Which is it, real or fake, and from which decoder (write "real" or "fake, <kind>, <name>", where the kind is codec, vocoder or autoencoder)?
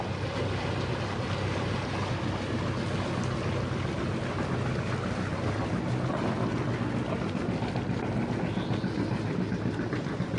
real